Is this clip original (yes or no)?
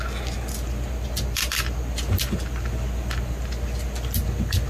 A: yes